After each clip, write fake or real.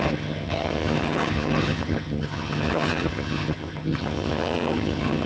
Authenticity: fake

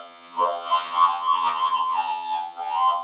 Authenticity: fake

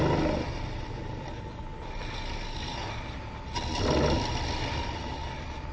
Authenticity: real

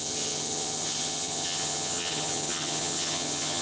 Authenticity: fake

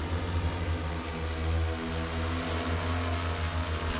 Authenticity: real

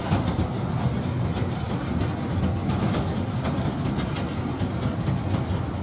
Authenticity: real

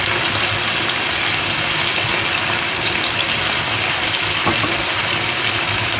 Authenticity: real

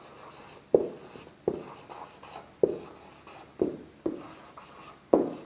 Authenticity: real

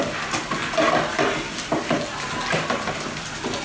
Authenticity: real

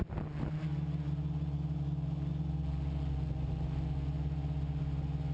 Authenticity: real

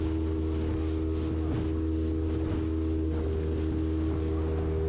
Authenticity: real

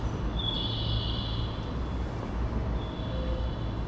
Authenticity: real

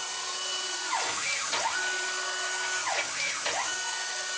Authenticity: real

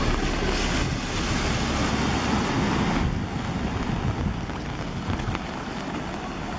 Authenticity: real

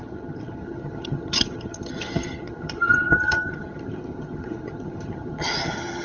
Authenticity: fake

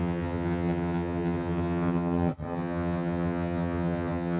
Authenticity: fake